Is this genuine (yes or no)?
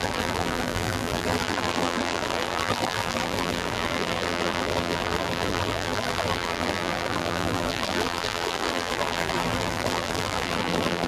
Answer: no